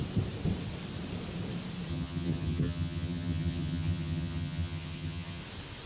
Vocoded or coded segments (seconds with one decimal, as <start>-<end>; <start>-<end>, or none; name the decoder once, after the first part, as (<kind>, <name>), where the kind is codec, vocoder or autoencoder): 1.9-5.4 (vocoder, HiFi-GAN)